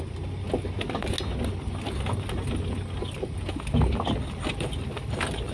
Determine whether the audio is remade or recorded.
recorded